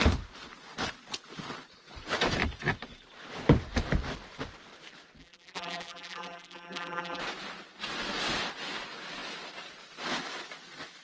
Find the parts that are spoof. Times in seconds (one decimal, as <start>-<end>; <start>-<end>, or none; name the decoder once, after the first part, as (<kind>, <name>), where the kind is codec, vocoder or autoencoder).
5.2-7.2 (vocoder, BigVGAN v2)

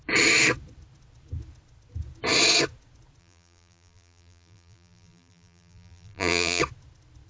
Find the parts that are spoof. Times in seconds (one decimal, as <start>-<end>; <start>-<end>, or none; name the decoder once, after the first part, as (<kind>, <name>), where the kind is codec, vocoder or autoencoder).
3.2-6.6 (vocoder, BigVGAN v2)

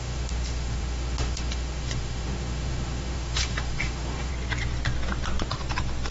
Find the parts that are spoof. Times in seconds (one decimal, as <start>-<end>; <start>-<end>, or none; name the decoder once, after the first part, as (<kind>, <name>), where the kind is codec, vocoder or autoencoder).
0.0-4.3 (autoencoder, DAC-VAE)

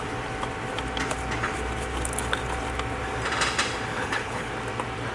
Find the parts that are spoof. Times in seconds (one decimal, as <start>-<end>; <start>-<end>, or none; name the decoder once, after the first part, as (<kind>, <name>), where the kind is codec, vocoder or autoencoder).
3.9-4.5 (codec, HILCodec)